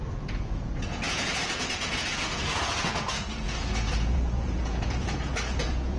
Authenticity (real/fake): fake